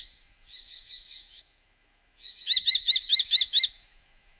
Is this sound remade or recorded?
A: remade